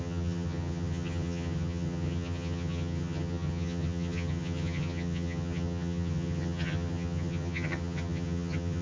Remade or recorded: remade